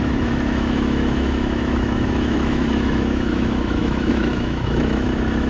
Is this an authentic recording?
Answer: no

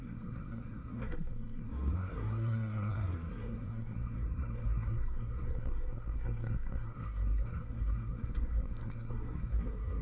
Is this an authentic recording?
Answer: no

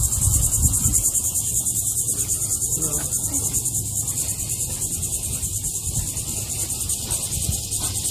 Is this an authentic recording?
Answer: yes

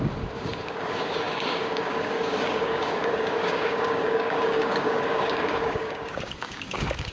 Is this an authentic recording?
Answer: no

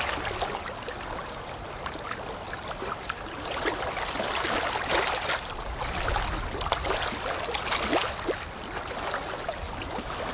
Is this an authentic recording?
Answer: yes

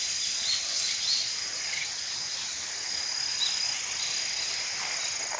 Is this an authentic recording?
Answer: yes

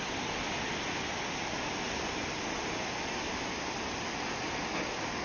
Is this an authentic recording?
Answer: yes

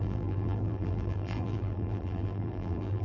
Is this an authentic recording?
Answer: no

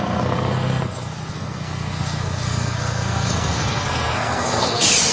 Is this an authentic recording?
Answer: no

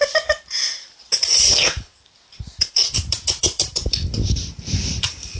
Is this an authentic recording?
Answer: no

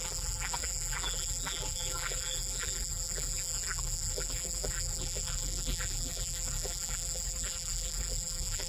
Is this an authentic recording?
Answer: no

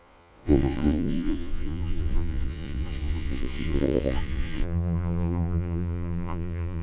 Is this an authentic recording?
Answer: no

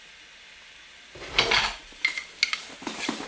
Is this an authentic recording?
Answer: yes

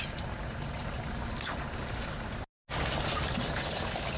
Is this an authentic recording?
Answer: yes